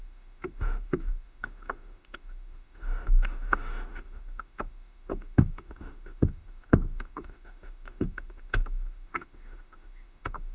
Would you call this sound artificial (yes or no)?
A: yes